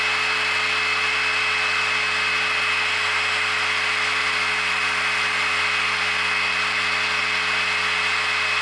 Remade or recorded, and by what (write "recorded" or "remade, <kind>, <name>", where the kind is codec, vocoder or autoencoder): recorded